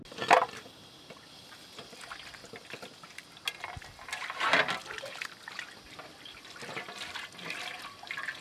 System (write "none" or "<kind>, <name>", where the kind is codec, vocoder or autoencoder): none